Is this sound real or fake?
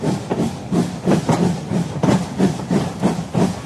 real